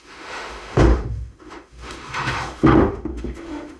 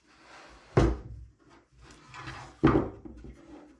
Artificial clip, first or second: first